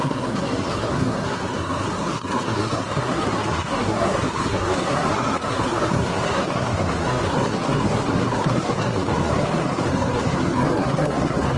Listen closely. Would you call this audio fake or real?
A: fake